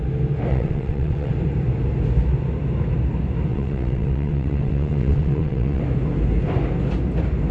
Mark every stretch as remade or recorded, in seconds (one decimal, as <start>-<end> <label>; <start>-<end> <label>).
0.0-0.5 recorded; 0.5-1.3 remade; 1.3-3.5 recorded; 3.5-5.8 remade; 5.8-7.5 recorded